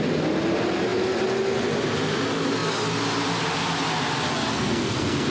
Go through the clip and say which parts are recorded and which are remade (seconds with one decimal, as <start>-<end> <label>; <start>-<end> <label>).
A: 0.0-4.5 recorded; 4.5-5.3 remade